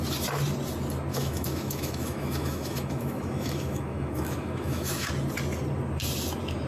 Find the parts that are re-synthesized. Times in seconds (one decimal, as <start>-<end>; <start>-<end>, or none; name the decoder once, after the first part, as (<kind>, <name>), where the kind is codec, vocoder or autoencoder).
1.1-5.1 (autoencoder, DAC-VAE)